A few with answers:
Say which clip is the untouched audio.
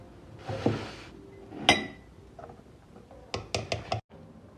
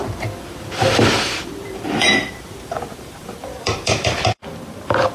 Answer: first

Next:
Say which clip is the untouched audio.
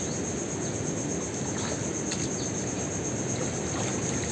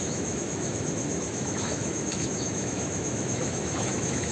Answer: first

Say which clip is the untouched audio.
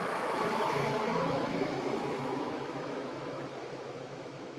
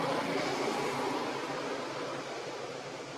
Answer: second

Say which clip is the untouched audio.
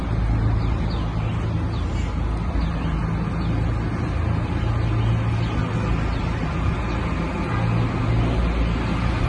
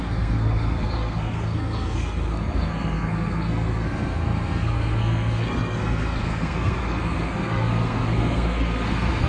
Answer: first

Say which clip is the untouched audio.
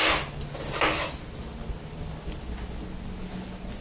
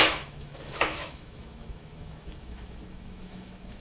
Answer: first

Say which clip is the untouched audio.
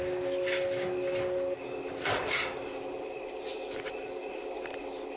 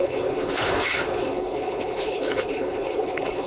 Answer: first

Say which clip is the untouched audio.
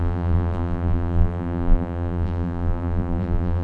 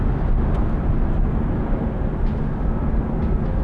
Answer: second